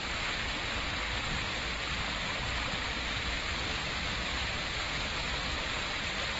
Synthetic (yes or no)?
no